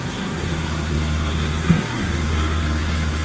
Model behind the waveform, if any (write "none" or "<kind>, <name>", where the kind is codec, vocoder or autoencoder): codec, SNAC